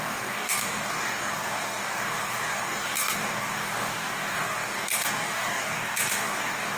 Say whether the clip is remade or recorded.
remade